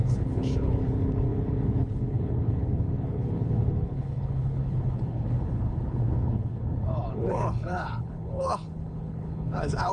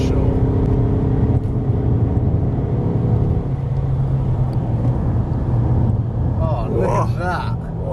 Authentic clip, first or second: second